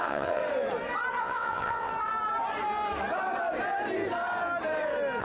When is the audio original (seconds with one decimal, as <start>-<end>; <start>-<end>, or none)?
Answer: 0.4-1.2; 1.9-5.2